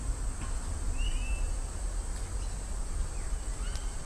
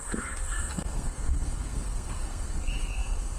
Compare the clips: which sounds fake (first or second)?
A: second